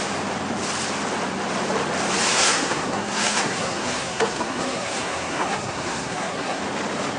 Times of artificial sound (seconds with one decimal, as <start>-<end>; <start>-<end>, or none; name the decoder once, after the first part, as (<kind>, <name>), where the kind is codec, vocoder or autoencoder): 2.3-6.6 (codec, SNAC)